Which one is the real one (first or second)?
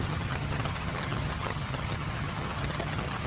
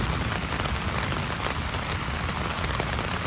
second